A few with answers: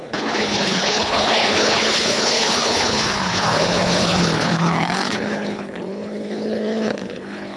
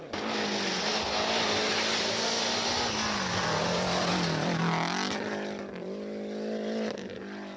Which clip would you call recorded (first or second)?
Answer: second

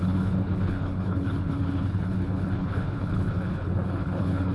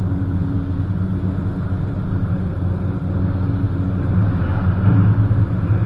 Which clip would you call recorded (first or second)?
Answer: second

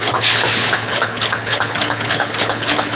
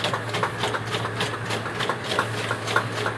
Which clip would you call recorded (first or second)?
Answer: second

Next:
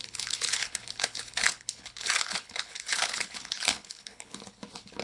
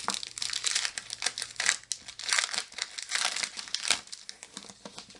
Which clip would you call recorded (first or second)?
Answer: second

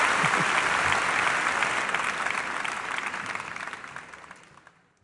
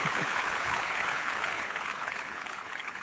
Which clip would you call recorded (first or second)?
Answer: first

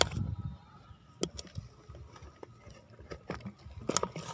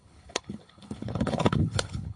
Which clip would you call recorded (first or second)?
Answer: first